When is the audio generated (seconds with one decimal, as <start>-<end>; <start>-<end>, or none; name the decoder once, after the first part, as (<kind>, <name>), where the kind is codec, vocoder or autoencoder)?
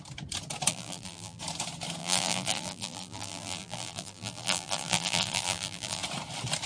0.7-1.4 (vocoder, BigVGAN v2); 2.0-6.0